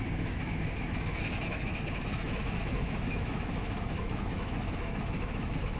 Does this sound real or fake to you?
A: fake